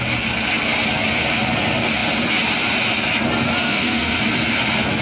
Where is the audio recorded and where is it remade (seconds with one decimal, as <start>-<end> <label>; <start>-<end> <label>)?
0.0-3.6 recorded; 3.6-4.2 remade; 4.2-5.0 recorded